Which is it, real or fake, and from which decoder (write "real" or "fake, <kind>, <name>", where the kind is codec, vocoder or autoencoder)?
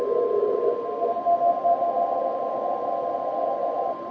real